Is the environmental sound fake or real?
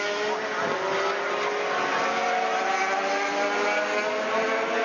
real